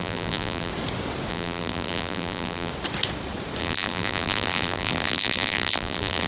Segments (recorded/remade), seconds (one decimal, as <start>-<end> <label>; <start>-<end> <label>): 0.0-0.7 remade; 0.7-1.3 recorded; 1.3-2.7 remade; 2.7-3.6 recorded; 3.6-6.3 remade